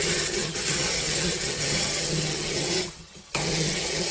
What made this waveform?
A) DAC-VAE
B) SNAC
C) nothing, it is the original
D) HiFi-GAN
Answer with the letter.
D